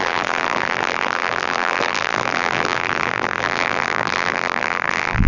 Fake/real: fake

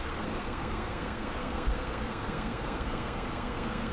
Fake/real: fake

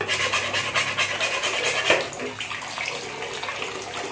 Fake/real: real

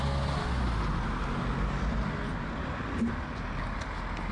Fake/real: real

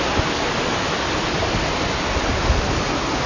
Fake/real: real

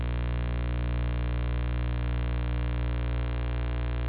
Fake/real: real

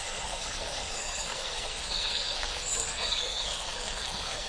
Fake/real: fake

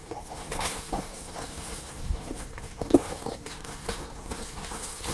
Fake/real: fake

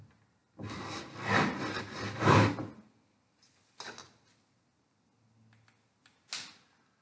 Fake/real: real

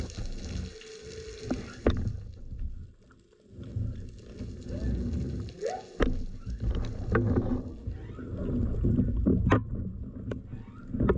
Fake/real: real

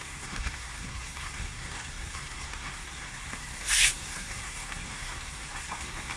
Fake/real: fake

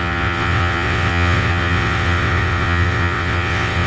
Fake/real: fake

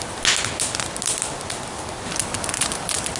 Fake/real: real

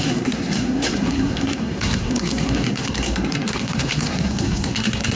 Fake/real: fake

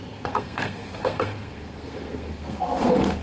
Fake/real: fake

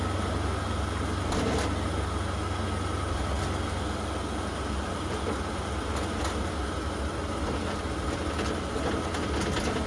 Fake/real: real